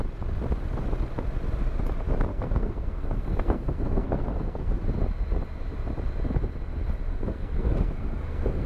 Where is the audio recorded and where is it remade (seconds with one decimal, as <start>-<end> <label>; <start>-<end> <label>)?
0.0-2.3 recorded; 2.3-4.8 remade; 4.8-7.1 recorded; 7.1-8.7 remade

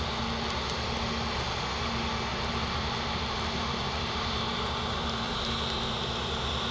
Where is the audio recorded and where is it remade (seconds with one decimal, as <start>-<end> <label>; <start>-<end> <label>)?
0.0-2.3 recorded; 2.3-5.3 remade; 5.3-6.7 recorded